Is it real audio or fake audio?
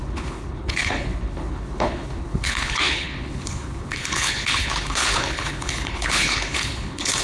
fake